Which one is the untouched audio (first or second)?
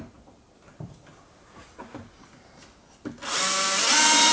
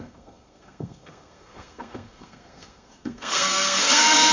first